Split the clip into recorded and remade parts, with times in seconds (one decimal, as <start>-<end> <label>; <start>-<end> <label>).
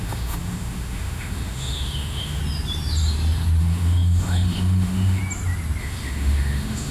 0.0-2.4 remade; 2.4-3.6 recorded; 3.6-5.2 remade; 5.2-5.8 recorded; 5.8-6.9 remade